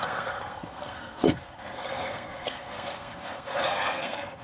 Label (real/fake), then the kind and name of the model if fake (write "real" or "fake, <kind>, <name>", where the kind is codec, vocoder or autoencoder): fake, codec, SNAC